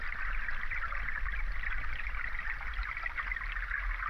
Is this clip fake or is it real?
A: real